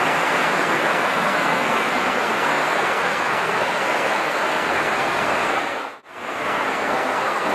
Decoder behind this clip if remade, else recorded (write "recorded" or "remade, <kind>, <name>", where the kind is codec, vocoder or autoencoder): remade, codec, SNAC